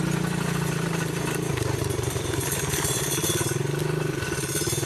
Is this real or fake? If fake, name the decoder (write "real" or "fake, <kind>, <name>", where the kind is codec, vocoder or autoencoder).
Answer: fake, vocoder, BigVGAN v2